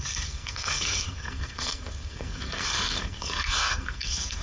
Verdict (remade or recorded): remade